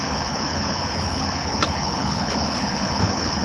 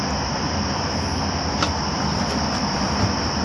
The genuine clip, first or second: second